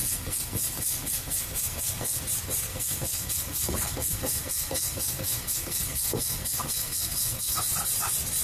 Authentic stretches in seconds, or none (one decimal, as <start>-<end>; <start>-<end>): 2.2-2.6; 7.6-8.4